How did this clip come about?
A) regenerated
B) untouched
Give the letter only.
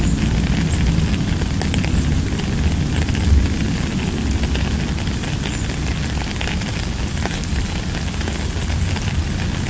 B